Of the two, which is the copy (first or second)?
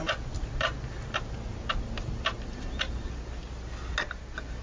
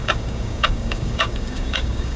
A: second